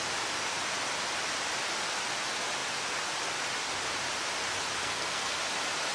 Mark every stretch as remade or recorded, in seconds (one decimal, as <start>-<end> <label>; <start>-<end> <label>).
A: 0.0-4.8 recorded; 4.8-5.4 remade; 5.4-5.9 recorded